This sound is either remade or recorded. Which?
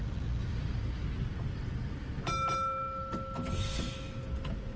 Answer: recorded